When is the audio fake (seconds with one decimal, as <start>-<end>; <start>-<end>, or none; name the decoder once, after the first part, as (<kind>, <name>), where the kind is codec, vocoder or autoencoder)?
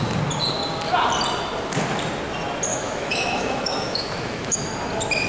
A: 2.7-4.7 (autoencoder, DAC-VAE)